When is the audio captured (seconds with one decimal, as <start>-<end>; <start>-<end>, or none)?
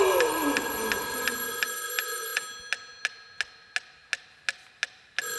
0.0-5.4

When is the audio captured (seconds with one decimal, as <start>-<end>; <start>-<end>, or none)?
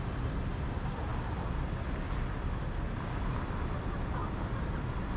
0.0-5.2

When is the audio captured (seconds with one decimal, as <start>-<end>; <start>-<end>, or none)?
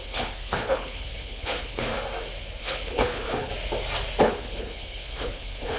1.9-2.6; 3.5-4.2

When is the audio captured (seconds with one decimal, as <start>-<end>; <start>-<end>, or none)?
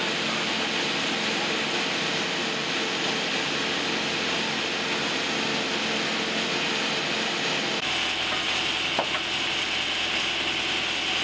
0.0-11.2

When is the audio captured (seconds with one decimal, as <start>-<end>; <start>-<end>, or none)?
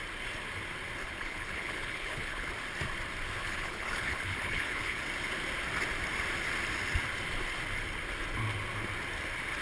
0.0-1.0; 2.5-3.4; 5.0-9.6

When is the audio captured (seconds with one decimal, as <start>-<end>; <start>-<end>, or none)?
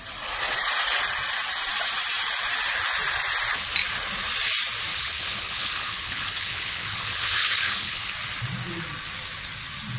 0.0-4.9; 8.1-10.0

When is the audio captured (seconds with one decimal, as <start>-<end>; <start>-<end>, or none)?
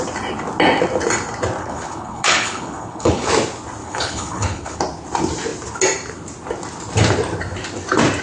0.0-1.6; 3.3-3.8; 4.8-8.2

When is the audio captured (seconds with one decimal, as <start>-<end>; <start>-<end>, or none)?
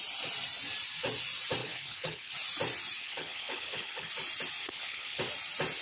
0.0-1.6; 2.3-3.0; 4.1-4.6; 5.2-5.8